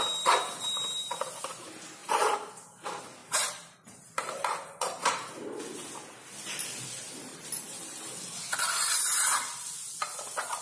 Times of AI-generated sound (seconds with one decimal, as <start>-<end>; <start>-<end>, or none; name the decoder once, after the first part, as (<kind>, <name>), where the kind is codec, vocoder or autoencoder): 2.0-2.5 (vocoder, BigVGAN v2); 3.2-5.3; 7.3-8.0